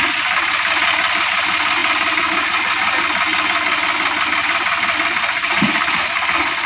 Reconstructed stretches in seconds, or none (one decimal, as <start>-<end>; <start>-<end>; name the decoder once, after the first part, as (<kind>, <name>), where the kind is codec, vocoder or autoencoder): none

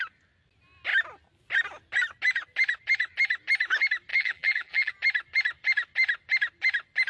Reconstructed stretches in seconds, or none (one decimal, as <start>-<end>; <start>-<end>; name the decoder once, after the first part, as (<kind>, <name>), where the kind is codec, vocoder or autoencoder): 4.1-4.9 (vocoder, BigVGAN v2)

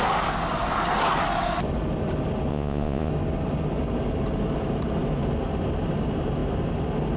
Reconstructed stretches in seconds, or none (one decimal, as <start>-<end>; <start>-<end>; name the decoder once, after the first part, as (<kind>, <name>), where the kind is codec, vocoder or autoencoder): 2.5-3.1 (vocoder, Vocos)